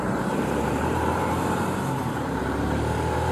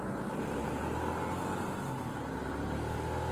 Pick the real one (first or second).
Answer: second